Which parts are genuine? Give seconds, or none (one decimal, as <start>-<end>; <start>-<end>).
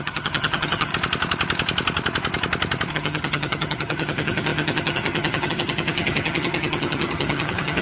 0.9-2.9